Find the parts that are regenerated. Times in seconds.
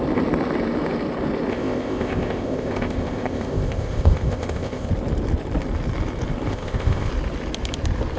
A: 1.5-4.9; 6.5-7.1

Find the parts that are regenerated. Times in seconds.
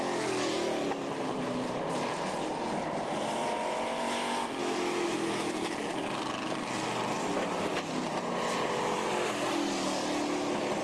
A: 4.6-5.5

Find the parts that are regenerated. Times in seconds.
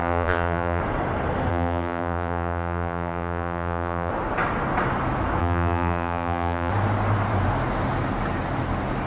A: 0.0-0.8; 1.5-4.1; 5.4-6.7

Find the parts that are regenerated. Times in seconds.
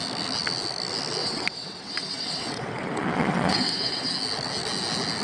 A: 1.2-4.1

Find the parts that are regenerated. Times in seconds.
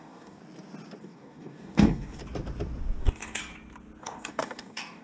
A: 0.0-0.4; 1.0-2.2; 3.0-3.4; 4.0-5.0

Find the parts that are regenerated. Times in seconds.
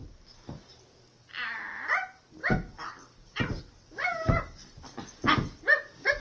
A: none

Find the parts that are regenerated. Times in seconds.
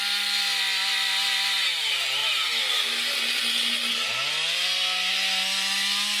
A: none